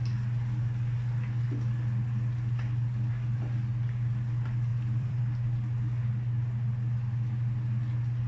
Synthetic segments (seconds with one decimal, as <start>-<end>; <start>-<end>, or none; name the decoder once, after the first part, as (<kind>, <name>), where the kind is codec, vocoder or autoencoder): 4.7-5.2 (vocoder, BigVGAN v2)